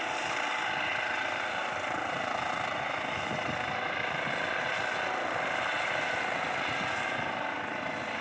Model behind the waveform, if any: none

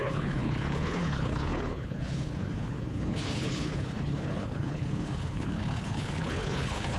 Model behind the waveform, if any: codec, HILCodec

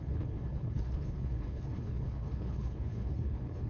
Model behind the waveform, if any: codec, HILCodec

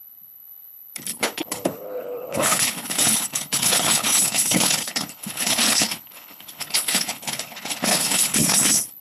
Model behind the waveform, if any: codec, HILCodec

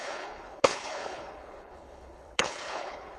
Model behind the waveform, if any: codec, HILCodec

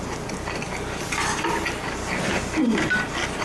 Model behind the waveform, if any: none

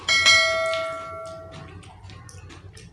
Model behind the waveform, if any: none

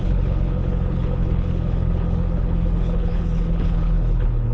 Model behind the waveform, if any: codec, HILCodec